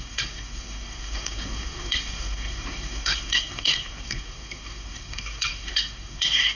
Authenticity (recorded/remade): remade